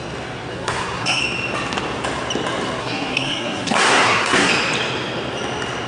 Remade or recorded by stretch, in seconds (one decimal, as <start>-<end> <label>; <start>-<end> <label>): 0.0-0.5 recorded; 0.5-1.2 remade; 1.2-2.8 recorded; 2.8-4.5 remade; 4.5-5.9 recorded